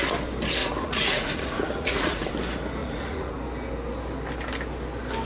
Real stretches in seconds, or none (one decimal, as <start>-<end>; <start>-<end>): 0.0-0.6; 2.3-2.8; 3.3-5.3